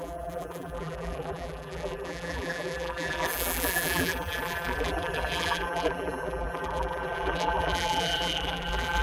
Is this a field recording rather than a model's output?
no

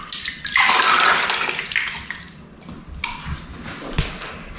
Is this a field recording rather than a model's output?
yes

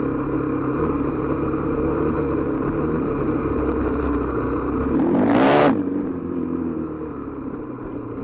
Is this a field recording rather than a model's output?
no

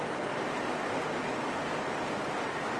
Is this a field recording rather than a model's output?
yes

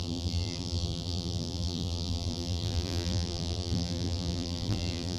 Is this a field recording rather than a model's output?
no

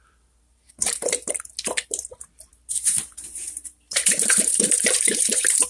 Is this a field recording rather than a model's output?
no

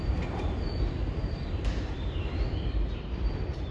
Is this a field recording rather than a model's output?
no